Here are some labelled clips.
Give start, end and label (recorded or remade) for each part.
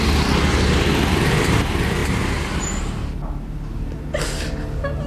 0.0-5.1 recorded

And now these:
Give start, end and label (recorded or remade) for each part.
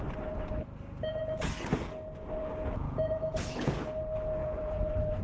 0.0-2.4 recorded; 2.4-3.9 remade; 3.9-4.4 recorded; 4.4-5.2 remade